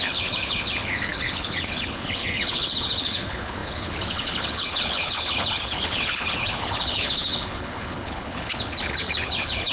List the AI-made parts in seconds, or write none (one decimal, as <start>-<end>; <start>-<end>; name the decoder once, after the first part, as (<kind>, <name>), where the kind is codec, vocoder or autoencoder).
0.0-9.7 (codec, HILCodec)